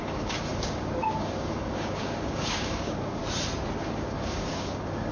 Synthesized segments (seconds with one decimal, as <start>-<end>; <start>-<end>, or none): 0.0-3.2; 3.8-5.1